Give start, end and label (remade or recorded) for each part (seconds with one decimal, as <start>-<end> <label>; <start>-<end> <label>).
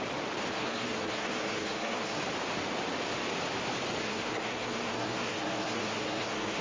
0.0-0.5 recorded; 0.5-2.2 remade; 2.2-4.0 recorded; 4.0-6.6 remade